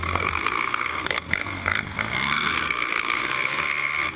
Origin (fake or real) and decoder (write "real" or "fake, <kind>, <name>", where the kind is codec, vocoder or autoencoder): fake, codec, SNAC